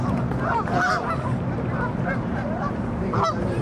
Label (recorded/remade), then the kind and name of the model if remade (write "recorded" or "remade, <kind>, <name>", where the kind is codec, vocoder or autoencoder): remade, vocoder, BigVGAN v2